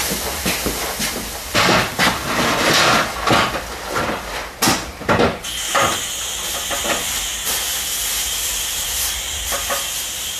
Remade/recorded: recorded